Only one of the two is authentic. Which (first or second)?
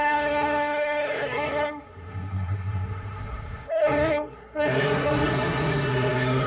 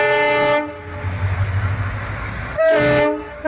second